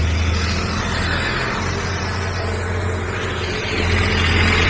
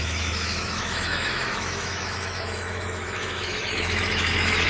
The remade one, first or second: second